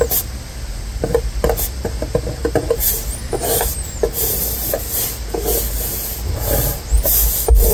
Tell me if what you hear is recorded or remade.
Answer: recorded